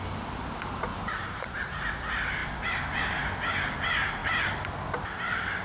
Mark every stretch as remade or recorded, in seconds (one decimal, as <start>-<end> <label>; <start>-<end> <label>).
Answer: 0.0-0.9 recorded; 0.9-1.9 remade; 1.9-4.2 recorded; 4.2-4.7 remade; 4.7-5.6 recorded